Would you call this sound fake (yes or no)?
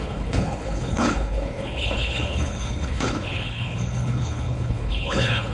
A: yes